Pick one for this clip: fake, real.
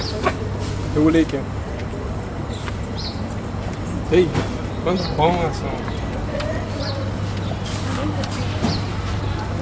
real